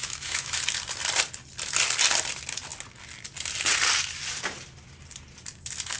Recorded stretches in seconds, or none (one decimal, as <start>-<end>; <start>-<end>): 0.6-6.0